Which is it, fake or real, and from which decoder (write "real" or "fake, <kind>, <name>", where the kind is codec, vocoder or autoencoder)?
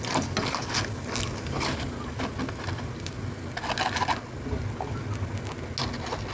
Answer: real